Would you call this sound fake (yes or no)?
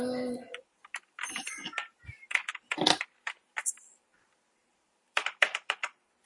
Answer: yes